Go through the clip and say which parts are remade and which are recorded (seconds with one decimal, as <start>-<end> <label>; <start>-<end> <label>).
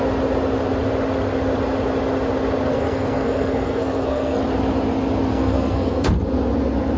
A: 0.0-2.7 recorded; 2.7-4.4 remade; 4.4-5.3 recorded; 5.3-6.1 remade; 6.1-7.0 recorded